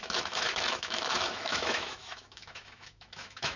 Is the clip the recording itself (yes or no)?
no